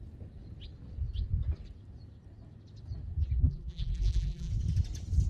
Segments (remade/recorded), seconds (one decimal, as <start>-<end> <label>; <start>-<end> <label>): 0.0-3.4 recorded; 3.4-4.5 remade; 4.5-5.3 recorded